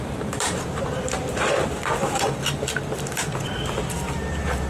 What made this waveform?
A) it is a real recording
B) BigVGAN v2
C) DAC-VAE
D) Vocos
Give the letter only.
B